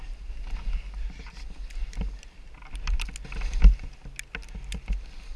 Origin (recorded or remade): recorded